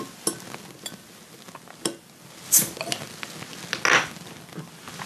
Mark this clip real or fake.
real